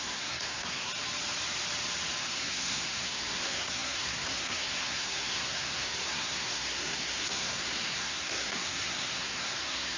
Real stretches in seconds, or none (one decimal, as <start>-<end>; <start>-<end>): 0.9-2.2

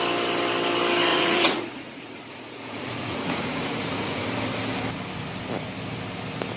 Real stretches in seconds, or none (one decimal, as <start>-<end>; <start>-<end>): 0.0-1.1; 4.2-6.6